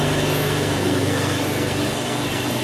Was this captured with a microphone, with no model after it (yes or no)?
no